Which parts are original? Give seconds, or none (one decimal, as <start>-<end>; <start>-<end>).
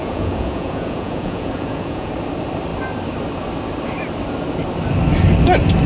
2.1-5.9